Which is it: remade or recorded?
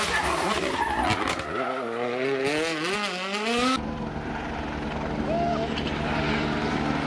recorded